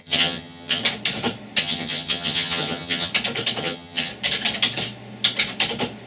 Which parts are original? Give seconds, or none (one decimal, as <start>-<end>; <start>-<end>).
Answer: 0.8-1.6; 3.1-3.6; 4.1-6.1